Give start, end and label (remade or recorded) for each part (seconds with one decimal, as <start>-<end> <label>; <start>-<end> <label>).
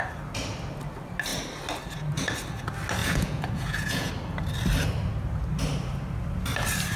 0.0-3.0 recorded; 3.0-4.1 remade; 4.1-7.0 recorded